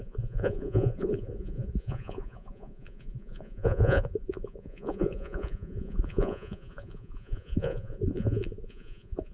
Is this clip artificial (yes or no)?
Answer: yes